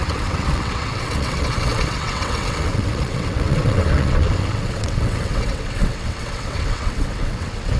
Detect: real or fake fake